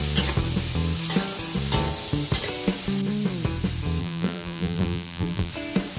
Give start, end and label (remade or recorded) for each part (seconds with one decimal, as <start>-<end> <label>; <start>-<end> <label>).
0.0-4.0 recorded; 4.0-5.5 remade; 5.5-6.0 recorded